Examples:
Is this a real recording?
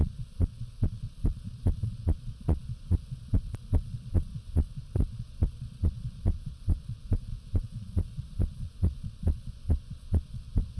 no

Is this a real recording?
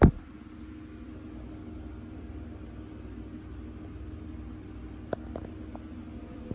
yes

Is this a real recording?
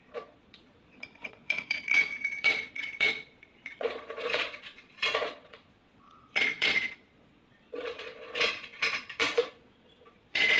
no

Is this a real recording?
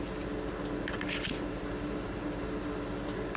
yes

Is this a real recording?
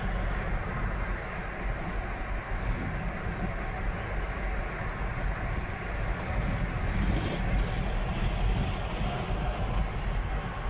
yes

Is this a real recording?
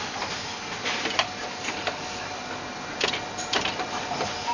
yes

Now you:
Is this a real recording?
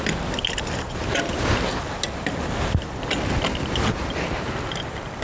yes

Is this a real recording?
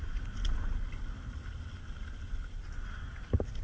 yes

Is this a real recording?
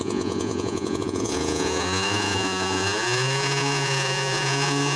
no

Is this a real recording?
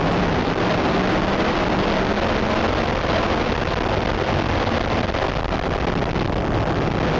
yes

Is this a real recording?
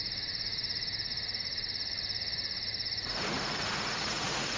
no